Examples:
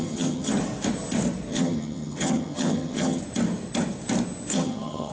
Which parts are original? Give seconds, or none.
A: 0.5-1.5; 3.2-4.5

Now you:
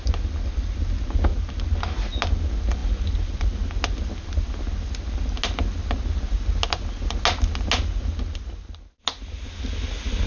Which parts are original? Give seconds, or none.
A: 0.0-10.3